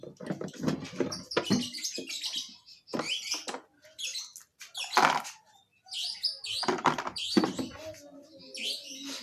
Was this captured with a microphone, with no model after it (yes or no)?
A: yes